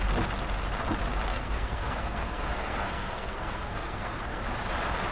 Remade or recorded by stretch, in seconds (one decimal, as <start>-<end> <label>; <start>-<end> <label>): 0.0-1.3 recorded; 1.3-4.4 remade; 4.4-5.1 recorded